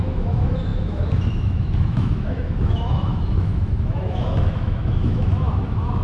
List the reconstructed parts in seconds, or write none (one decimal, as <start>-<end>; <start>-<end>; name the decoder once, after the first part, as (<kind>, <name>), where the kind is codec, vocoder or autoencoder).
0.0-6.0 (autoencoder, DAC-VAE)

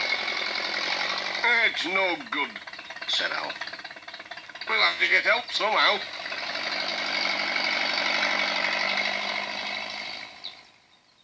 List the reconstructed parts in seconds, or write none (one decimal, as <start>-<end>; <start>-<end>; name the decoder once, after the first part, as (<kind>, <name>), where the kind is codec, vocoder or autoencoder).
4.7-5.2 (vocoder, Vocos)

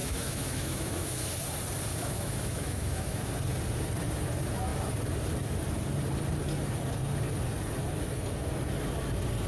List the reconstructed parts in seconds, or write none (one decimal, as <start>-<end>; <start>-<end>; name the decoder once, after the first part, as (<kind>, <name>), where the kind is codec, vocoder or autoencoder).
0.0-1.3 (autoencoder, DAC-VAE); 1.9-3.3